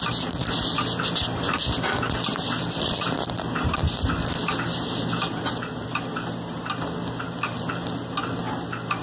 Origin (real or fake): real